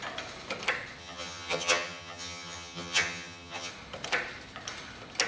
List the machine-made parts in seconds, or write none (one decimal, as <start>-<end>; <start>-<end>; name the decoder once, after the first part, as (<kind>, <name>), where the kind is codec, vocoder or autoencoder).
1.0-3.7 (vocoder, HiFi-GAN)